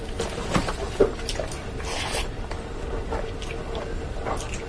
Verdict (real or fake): real